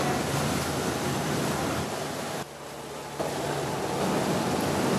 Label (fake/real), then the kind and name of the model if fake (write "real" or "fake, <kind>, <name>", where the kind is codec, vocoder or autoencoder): real